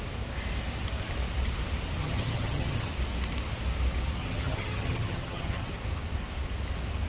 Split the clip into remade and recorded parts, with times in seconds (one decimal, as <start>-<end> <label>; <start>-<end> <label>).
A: 0.0-2.0 recorded; 2.0-2.9 remade; 2.9-4.2 recorded; 4.2-5.7 remade; 5.7-7.1 recorded